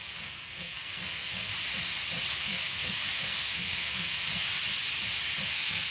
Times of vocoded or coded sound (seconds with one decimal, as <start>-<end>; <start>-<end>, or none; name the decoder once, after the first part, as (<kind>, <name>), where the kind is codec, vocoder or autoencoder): 0.0-1.5 (codec, SNAC); 2.3-4.5; 5.5-5.9